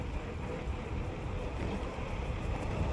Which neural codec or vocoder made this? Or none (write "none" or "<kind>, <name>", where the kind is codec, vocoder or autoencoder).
none